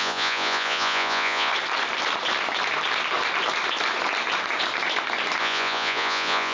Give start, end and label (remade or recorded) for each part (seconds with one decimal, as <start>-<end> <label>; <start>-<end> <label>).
0.0-1.5 remade; 1.5-5.4 recorded; 5.4-6.5 remade